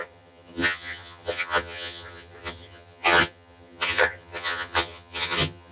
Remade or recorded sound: remade